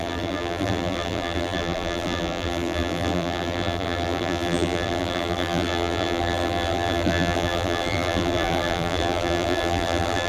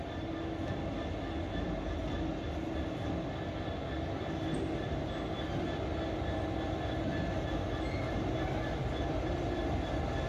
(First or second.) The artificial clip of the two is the first